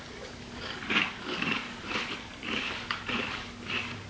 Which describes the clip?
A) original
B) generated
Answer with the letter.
B